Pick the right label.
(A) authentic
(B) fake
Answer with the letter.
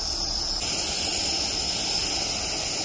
A